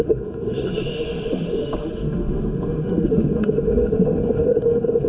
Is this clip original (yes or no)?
no